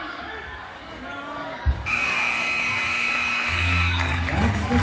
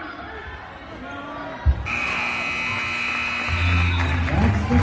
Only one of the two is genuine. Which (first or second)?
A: second